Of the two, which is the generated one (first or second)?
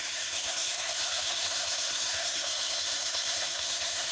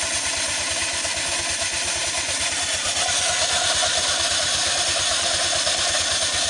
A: first